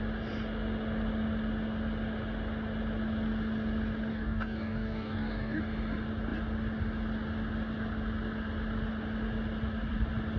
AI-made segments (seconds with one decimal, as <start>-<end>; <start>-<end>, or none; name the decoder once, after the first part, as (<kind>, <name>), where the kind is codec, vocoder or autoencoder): 4.1-5.6 (codec, DAC)